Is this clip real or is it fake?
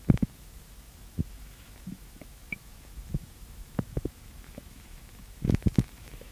fake